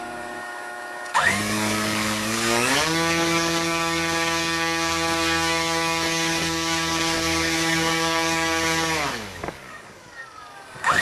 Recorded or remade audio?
remade